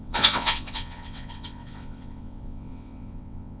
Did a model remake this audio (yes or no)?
yes